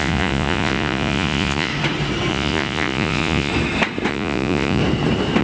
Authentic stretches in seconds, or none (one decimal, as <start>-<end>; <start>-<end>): 1.7-2.3; 3.5-4.1; 4.8-5.4